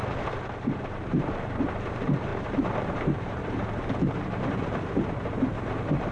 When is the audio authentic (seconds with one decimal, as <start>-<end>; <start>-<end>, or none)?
0.0-0.8